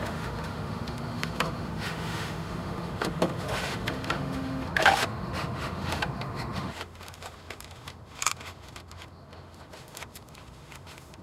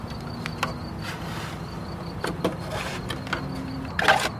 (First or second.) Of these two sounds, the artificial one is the first